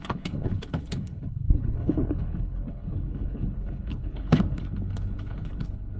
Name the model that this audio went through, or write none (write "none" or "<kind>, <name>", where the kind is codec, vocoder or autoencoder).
codec, HILCodec